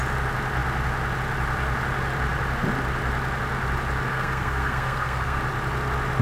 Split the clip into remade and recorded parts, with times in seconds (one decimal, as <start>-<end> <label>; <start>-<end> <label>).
0.0-4.1 recorded; 4.1-5.4 remade; 5.4-6.2 recorded